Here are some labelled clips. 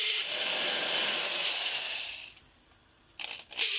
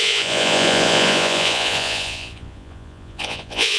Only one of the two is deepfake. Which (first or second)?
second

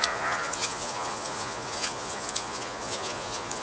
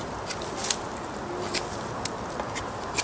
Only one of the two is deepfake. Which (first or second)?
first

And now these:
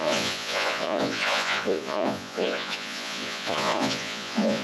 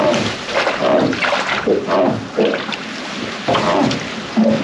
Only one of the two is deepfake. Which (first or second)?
first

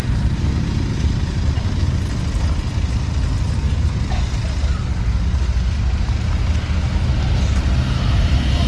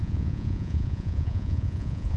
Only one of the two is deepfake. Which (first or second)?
second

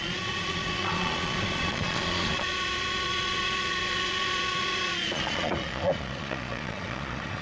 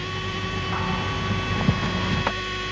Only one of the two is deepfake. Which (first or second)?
first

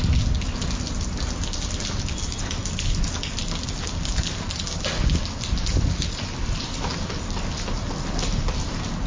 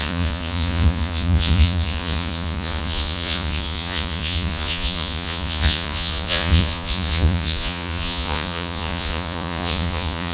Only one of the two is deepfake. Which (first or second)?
second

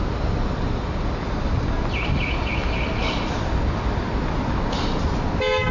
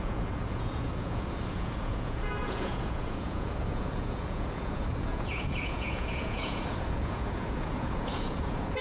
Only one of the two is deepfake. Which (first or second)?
second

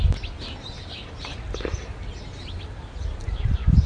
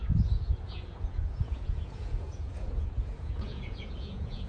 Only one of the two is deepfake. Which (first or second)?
second